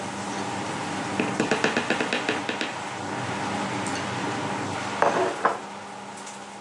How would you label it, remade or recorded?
recorded